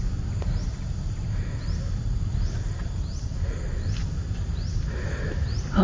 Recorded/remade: recorded